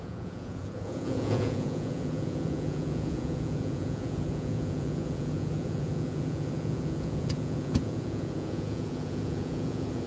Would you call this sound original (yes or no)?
no